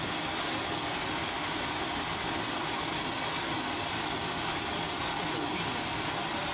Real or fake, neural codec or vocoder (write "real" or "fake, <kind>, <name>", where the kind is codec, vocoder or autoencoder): real